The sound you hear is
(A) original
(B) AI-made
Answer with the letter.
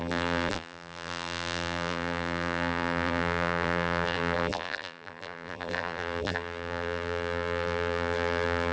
B